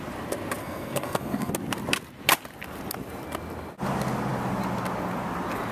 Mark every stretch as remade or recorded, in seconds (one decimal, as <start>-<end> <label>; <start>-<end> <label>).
0.0-0.6 recorded; 0.6-1.5 remade; 1.5-5.7 recorded